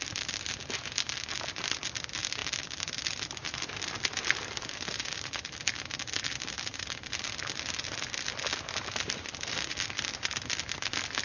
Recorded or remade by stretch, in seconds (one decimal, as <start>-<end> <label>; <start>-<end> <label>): 0.0-11.2 recorded